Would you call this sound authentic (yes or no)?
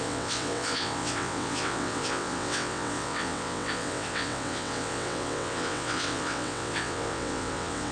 no